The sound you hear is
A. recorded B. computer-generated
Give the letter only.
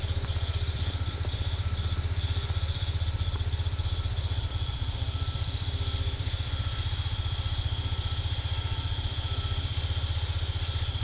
B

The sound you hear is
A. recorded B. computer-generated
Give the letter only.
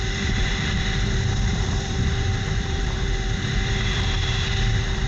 B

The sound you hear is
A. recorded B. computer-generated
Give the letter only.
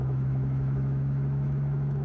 B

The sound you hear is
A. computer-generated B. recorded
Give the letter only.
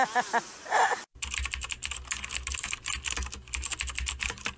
B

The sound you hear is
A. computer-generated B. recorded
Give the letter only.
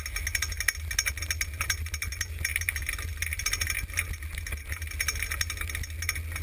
B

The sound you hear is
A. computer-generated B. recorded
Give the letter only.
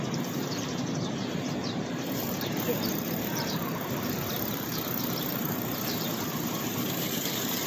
A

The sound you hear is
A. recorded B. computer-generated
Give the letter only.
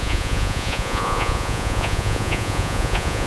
B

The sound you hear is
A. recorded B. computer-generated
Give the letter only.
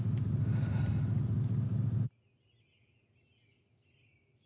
A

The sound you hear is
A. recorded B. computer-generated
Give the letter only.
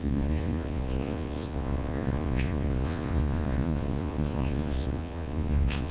B